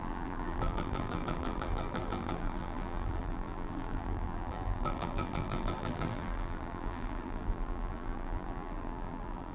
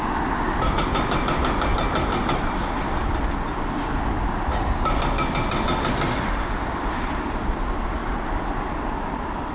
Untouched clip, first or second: second